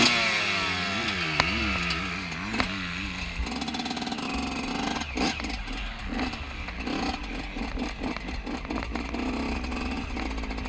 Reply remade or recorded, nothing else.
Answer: recorded